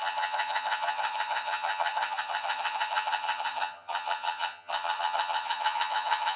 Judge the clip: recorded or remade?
remade